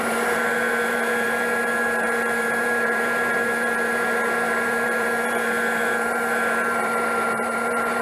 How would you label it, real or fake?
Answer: fake